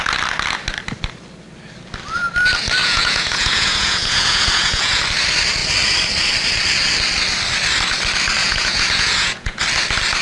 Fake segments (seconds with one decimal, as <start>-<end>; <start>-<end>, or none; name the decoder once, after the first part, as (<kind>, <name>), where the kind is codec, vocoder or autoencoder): 2.8-5.0 (vocoder, Vocos); 8.4-9.6